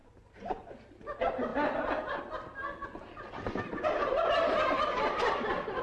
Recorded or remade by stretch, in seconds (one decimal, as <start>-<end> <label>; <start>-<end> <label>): 0.0-4.0 recorded; 4.0-5.3 remade; 5.3-5.8 recorded